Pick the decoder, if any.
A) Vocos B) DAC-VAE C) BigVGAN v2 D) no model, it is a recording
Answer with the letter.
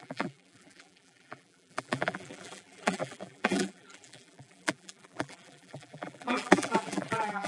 C